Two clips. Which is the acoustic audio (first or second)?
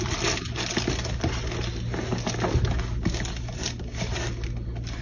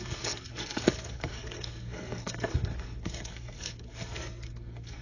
first